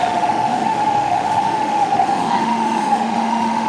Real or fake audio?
fake